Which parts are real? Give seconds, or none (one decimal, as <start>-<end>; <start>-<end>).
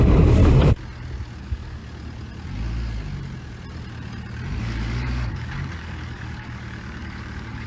0.4-1.4; 1.8-4.6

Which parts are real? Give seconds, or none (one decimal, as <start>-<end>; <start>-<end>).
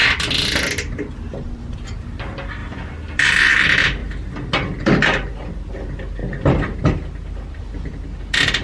0.0-1.7; 4.0-4.8; 6.2-7.3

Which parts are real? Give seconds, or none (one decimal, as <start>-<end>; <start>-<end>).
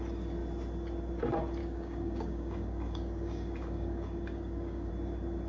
0.0-1.6; 4.9-5.5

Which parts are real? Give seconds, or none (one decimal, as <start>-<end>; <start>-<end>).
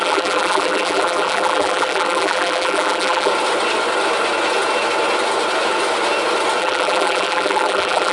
3.3-6.6